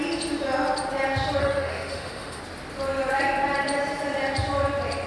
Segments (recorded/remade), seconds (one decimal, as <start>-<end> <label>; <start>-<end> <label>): 0.0-1.4 recorded; 1.4-2.4 remade; 2.4-5.1 recorded